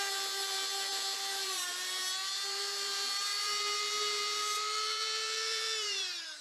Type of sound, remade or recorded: remade